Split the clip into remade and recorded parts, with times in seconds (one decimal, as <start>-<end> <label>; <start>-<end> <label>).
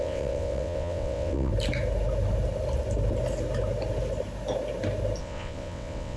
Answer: 0.0-1.5 remade; 1.5-5.2 recorded; 5.2-6.2 remade